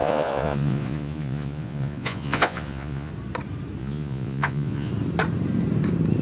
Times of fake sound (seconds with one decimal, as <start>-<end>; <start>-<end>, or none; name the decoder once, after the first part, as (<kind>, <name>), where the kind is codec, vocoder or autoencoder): 0.0-3.1 (vocoder, Vocos); 3.8-4.9